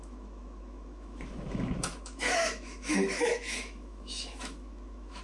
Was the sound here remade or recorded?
remade